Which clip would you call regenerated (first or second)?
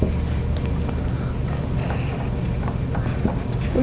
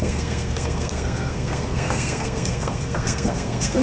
second